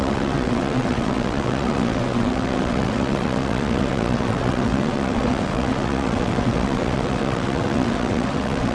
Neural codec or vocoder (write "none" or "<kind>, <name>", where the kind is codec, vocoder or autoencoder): vocoder, WaveNeXt